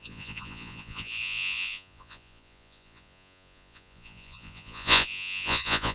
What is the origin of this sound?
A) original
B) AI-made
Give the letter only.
B